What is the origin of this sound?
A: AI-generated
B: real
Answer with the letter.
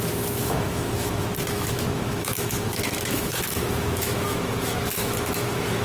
A